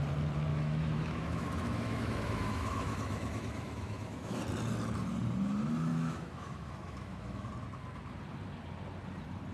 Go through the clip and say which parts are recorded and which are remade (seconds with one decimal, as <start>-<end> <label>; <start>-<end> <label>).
0.0-0.5 recorded; 0.5-4.4 remade; 4.4-5.9 recorded; 5.9-7.5 remade; 7.5-9.5 recorded